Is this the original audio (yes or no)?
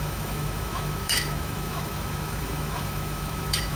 no